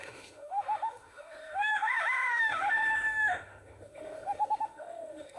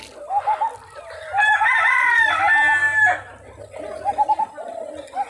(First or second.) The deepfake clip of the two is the first